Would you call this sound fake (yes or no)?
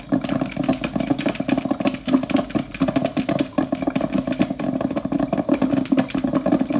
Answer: no